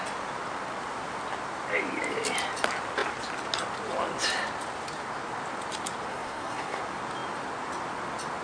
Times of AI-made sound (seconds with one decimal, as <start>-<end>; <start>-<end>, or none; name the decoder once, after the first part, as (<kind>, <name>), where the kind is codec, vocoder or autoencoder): 6.1-6.8 (codec, SNAC)